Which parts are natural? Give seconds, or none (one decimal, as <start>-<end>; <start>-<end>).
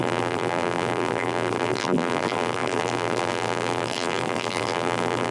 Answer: none